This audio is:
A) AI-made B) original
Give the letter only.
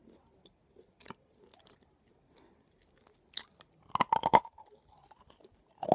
B